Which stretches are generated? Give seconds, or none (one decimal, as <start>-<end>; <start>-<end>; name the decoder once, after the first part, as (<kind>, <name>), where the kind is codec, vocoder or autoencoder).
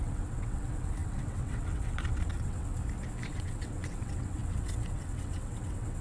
0.0-2.8 (vocoder, WaveNeXt); 3.3-6.0